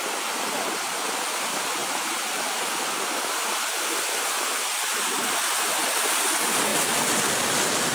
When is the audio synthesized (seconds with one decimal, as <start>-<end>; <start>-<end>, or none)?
none